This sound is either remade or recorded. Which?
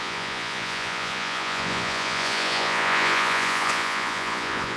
remade